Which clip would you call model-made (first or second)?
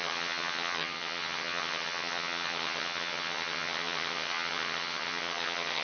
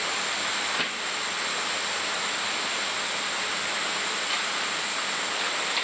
first